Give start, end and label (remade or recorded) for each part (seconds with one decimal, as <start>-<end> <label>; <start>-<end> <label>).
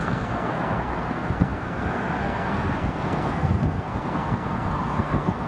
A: 0.0-5.5 remade